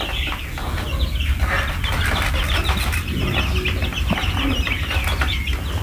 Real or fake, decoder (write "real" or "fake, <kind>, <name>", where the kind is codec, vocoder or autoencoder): real